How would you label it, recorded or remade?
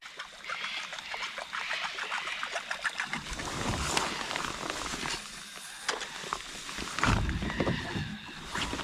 recorded